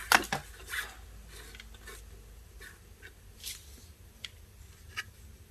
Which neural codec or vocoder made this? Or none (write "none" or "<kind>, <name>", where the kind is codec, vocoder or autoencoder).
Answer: none